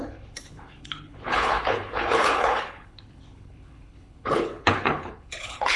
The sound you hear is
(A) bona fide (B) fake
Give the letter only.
B